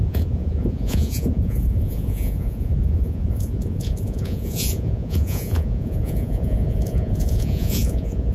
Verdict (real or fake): fake